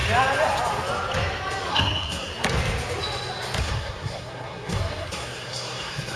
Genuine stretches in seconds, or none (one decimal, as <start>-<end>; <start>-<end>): 0.0-1.7; 2.3-3.6